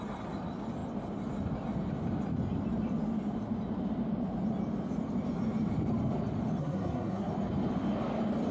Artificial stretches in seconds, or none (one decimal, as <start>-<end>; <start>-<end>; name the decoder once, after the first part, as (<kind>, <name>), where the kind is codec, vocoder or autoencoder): 6.6-7.3 (codec, SNAC)